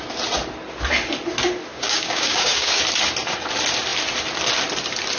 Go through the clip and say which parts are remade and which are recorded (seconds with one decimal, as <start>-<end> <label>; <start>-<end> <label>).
0.0-1.7 recorded; 1.7-2.8 remade; 2.8-5.2 recorded